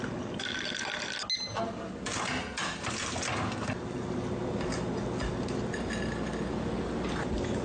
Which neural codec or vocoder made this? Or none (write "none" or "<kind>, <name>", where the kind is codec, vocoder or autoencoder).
none